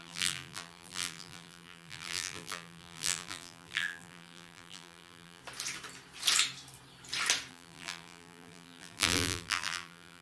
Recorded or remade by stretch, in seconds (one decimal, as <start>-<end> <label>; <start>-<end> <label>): 0.0-5.4 remade; 5.4-7.5 recorded; 7.5-10.2 remade